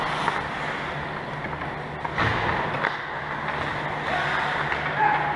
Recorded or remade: recorded